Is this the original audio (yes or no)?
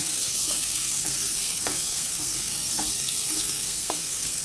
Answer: no